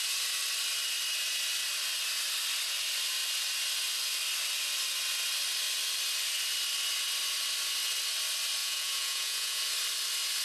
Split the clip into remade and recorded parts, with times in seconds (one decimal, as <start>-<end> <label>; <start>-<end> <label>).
0.0-8.6 recorded; 8.6-9.6 remade; 9.6-10.4 recorded

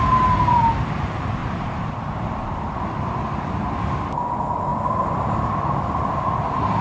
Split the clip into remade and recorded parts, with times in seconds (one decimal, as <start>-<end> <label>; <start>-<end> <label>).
0.0-1.4 recorded; 1.4-2.6 remade; 2.6-6.8 recorded

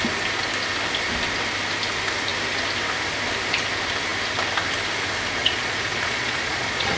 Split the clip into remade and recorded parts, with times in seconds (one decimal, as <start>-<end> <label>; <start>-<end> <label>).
0.0-5.4 recorded; 5.4-7.0 remade

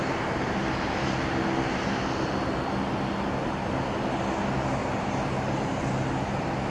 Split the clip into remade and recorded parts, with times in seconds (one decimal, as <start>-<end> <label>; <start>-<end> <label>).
0.0-4.8 recorded; 4.8-5.8 remade; 5.8-6.7 recorded

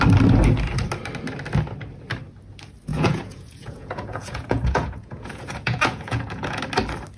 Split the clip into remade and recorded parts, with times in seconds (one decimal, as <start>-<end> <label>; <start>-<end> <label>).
0.0-2.9 recorded; 2.9-6.6 remade; 6.6-7.2 recorded

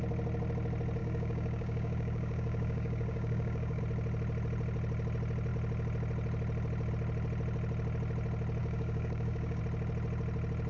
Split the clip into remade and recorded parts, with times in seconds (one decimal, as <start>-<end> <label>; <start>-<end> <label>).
0.0-1.0 recorded; 1.0-3.8 remade; 3.8-8.6 recorded; 8.6-9.6 remade; 9.6-10.7 recorded

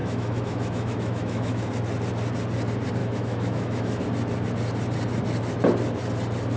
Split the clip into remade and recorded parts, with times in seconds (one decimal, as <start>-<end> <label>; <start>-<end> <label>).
0.0-1.7 remade; 1.7-3.0 recorded; 3.0-4.0 remade; 4.0-6.6 recorded

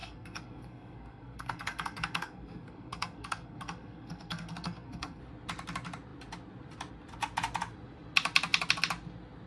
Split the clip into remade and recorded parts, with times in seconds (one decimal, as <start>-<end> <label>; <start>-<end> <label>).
0.0-5.2 remade; 5.2-9.5 recorded